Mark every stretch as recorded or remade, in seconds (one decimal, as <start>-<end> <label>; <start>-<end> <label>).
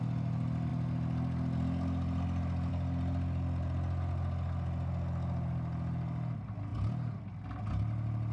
0.0-8.3 recorded